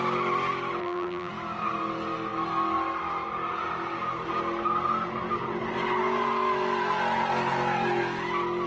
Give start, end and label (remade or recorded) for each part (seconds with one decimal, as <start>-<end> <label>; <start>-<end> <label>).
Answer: 0.0-0.8 recorded; 0.8-1.3 remade; 1.3-8.7 recorded